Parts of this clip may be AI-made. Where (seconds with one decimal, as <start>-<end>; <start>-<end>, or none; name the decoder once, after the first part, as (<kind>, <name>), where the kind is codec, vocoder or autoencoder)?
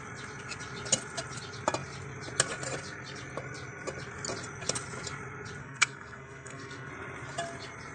5.6-6.9 (codec, SNAC)